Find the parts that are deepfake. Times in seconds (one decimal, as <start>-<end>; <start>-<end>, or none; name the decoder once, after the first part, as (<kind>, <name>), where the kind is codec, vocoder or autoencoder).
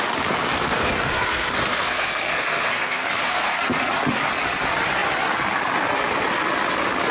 0.5-3.6 (codec, SNAC)